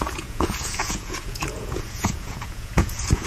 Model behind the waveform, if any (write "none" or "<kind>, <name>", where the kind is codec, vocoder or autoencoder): vocoder, Vocos